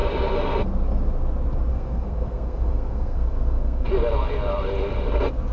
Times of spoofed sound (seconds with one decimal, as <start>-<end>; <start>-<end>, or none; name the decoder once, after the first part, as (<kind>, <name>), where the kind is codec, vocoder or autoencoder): 1.7-3.9 (codec, SNAC)

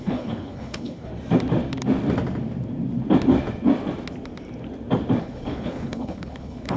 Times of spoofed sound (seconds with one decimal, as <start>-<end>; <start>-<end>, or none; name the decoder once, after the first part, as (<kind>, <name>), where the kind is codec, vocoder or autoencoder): 0.0-1.1 (codec, HILCodec); 5.2-6.8

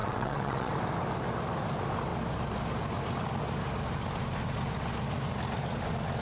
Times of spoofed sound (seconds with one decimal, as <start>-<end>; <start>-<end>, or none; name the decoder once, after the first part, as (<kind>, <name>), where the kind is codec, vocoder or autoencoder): 0.0-0.7 (vocoder, WaveNeXt)

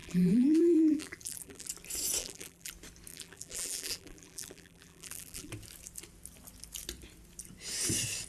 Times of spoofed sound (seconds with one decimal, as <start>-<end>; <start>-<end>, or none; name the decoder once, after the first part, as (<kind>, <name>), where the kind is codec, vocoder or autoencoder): 0.0-1.7 (vocoder, BigVGAN v2); 2.2-2.7; 3.1-5.5

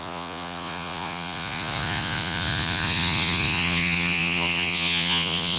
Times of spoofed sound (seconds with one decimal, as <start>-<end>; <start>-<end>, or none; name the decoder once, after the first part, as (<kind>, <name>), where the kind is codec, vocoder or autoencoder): 0.0-5.6 (vocoder, Vocos)